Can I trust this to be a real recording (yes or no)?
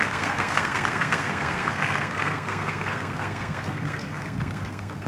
no